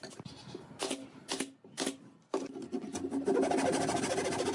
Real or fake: real